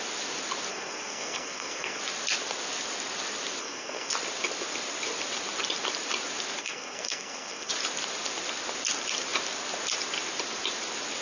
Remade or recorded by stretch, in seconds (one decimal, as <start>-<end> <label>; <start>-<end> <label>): 0.0-0.7 recorded; 0.7-2.0 remade; 2.0-3.6 recorded; 3.6-4.1 remade; 4.1-6.6 recorded; 6.6-7.7 remade; 7.7-11.2 recorded